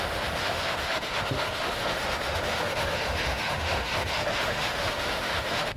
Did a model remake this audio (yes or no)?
yes